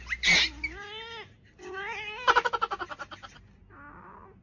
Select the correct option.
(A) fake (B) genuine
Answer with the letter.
B